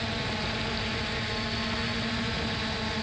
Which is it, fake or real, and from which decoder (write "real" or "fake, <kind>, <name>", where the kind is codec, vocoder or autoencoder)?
real